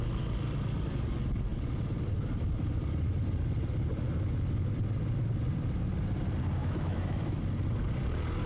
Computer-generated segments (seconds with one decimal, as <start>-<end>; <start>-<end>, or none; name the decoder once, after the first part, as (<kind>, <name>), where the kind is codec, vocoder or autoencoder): 6.6-7.4 (autoencoder, DAC-VAE)